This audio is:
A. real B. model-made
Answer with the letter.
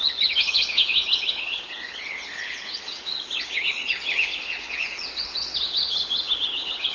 B